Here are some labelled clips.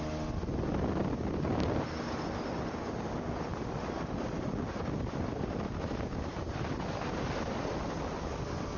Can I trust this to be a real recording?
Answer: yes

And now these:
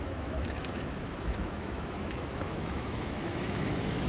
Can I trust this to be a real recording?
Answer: no